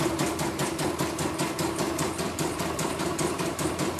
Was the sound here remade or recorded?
remade